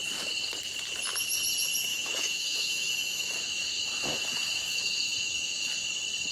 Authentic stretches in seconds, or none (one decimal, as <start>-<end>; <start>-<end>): 0.0-1.9; 5.7-6.3